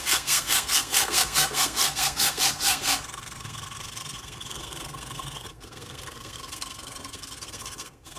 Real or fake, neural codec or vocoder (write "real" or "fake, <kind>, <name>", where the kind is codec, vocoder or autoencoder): fake, codec, SNAC